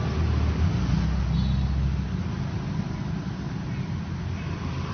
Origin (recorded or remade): recorded